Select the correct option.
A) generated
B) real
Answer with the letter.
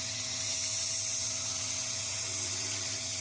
A